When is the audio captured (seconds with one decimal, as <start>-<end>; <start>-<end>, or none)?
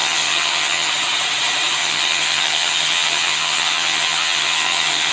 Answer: 0.9-1.8